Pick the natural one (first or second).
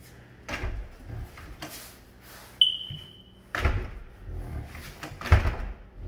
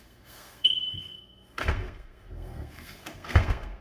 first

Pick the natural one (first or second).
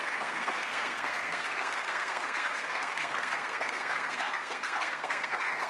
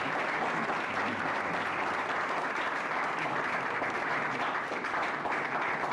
second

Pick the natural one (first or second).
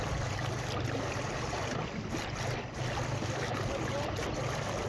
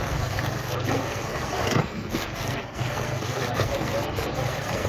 first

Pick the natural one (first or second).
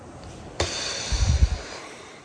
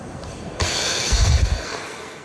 first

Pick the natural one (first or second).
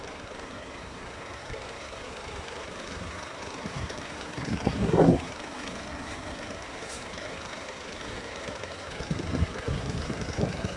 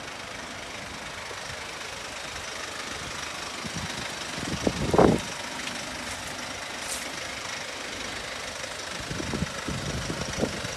second